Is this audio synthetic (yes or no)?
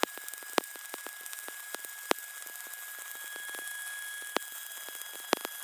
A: no